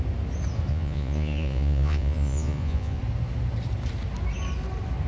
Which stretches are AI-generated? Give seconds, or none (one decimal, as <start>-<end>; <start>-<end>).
0.7-3.0